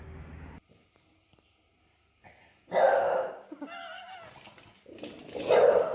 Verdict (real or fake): real